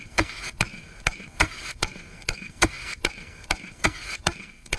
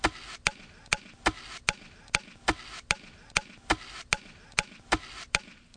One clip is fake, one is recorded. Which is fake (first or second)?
first